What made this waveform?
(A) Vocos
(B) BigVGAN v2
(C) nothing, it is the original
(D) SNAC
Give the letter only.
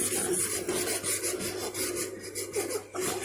C